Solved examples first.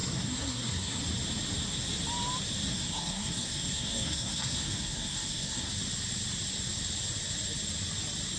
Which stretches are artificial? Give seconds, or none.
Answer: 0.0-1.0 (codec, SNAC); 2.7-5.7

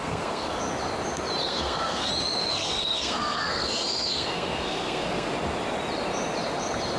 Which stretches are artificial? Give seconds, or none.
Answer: 0.0-0.6 (codec, SNAC); 1.4-2.1; 2.5-5.3

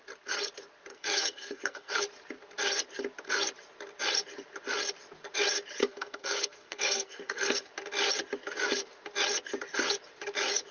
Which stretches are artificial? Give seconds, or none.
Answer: 0.9-2.0 (codec, SNAC); 5.8-7.7

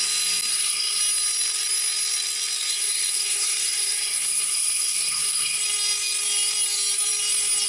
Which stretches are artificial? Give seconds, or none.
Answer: 0.5-1.0 (codec, SNAC); 2.7-5.6

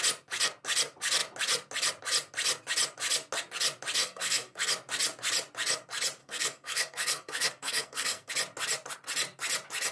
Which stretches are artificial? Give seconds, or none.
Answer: 4.0-4.7 (codec, SNAC); 6.2-8.3

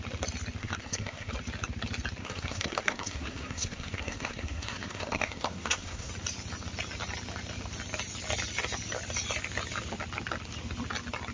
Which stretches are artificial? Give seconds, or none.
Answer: 0.6-1.3 (codec, SNAC); 2.2-6.1

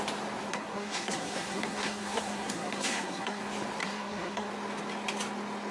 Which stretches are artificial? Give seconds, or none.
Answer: 0.5-3.4 (codec, SNAC); 3.8-4.5

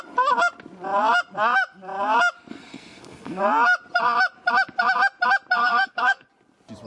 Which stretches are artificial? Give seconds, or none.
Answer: 2.5-3.4 (codec, SNAC); 5.6-6.3